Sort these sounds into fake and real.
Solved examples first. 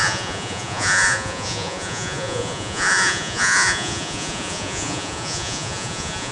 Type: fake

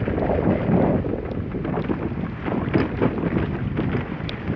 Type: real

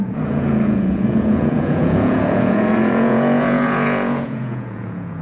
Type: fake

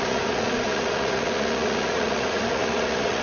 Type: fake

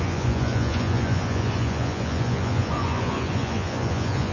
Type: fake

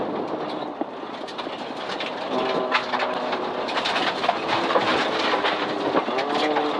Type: real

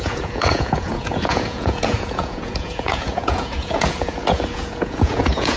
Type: fake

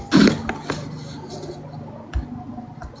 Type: real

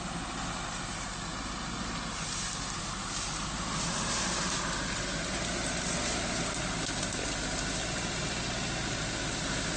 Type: real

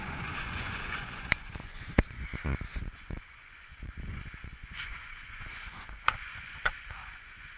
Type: fake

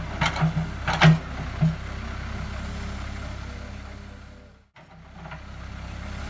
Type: real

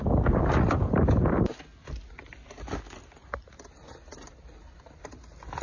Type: real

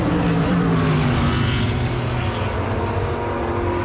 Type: real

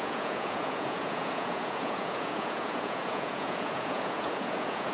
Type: fake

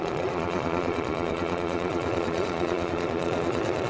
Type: fake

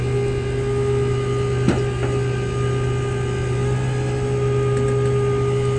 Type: real